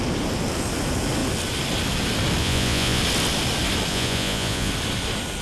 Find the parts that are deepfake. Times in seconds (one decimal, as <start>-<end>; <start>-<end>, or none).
2.4-3.0; 3.9-4.7